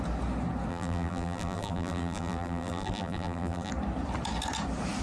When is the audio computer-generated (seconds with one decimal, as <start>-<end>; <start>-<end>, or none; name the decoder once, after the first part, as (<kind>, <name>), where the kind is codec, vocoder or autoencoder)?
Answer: 0.7-3.7 (vocoder, BigVGAN v2)